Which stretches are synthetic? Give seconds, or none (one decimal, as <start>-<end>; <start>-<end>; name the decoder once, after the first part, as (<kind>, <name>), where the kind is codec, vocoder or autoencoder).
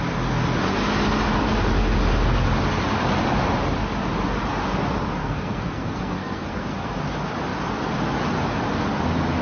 5.2-7.0 (codec, SNAC)